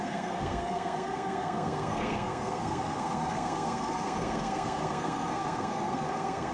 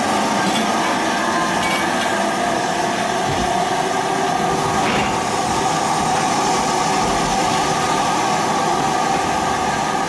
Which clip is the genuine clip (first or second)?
second